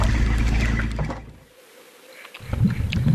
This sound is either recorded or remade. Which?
recorded